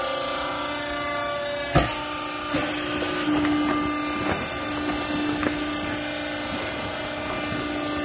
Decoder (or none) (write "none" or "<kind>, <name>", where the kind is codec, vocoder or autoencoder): none